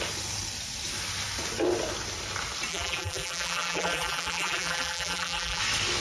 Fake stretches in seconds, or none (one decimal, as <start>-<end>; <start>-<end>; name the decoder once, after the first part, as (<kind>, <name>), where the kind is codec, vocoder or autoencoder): 2.7-5.6 (vocoder, BigVGAN v2)